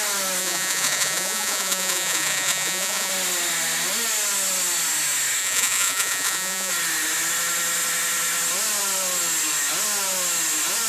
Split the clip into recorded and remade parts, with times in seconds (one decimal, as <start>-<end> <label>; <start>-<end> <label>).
0.0-0.4 recorded; 0.4-3.1 remade; 3.1-5.4 recorded; 5.4-6.7 remade; 6.7-10.9 recorded